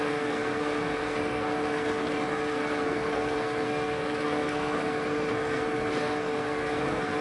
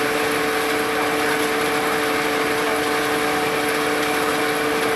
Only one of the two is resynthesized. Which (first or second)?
first